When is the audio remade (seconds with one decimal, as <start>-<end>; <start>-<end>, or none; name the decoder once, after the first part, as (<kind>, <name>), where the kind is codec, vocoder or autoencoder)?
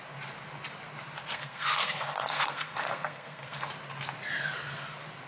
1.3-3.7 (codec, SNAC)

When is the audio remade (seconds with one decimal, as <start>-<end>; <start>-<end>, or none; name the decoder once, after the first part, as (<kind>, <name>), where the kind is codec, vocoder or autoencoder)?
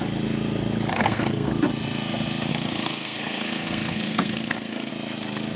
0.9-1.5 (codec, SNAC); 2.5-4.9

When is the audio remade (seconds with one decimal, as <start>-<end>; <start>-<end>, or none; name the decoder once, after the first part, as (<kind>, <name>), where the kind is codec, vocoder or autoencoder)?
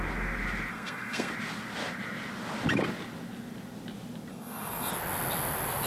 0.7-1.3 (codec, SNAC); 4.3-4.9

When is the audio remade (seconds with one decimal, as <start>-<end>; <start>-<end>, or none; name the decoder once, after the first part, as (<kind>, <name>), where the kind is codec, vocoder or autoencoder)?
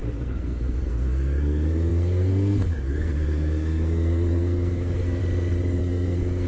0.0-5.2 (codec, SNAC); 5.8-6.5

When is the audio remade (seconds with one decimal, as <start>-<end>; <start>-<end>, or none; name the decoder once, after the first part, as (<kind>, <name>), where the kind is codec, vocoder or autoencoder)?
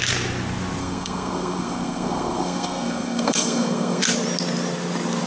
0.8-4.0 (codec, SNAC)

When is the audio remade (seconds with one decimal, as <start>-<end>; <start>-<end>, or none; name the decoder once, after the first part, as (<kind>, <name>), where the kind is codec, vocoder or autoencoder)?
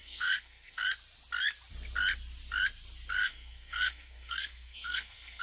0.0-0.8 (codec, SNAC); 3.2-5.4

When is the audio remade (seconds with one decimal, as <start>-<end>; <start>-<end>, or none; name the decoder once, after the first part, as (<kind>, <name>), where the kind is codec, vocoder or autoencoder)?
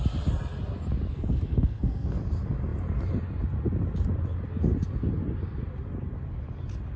1.1-2.2 (codec, SNAC)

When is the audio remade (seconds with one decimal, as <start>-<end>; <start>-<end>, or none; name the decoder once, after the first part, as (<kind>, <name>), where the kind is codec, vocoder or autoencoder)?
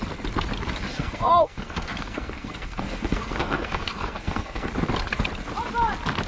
0.9-4.7 (codec, SNAC)